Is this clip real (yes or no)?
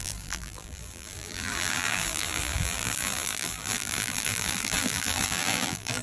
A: no